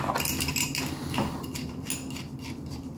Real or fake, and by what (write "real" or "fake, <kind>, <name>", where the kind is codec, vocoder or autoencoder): real